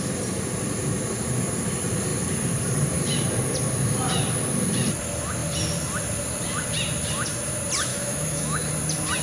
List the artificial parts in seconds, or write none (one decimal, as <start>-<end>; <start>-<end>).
7.9-8.7

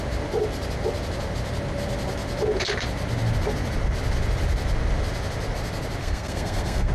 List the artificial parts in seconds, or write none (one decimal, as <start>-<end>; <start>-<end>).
6.0-6.9

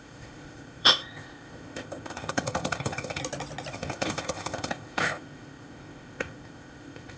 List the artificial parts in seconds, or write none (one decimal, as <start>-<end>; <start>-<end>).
0.0-3.2; 3.7-7.2

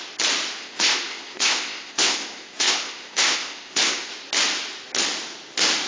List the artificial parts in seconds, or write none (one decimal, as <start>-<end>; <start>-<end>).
0.6-4.1

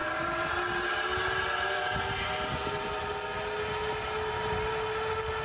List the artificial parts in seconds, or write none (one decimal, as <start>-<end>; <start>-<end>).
none

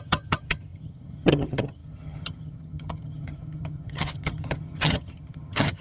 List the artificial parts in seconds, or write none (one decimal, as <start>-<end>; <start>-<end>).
0.0-5.8

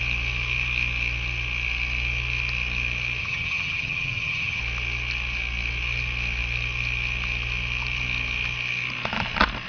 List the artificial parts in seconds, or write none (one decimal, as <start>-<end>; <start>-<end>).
3.2-4.6

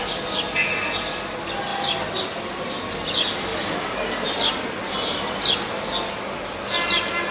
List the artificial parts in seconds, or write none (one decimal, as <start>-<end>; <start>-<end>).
none